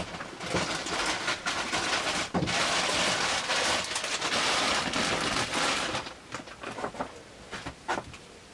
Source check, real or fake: real